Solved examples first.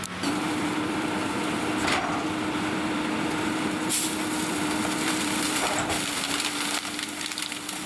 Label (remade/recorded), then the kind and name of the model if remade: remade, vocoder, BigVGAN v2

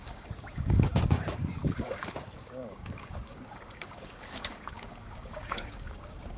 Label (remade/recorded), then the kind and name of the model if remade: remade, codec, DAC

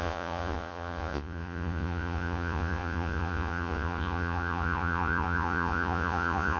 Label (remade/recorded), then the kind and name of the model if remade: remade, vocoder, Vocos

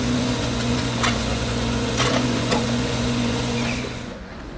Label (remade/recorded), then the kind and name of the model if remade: remade, vocoder, Vocos